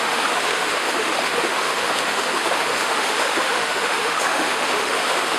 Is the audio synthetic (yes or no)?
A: yes